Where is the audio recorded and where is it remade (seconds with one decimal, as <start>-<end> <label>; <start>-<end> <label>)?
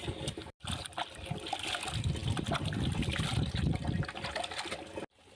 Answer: 0.0-5.4 recorded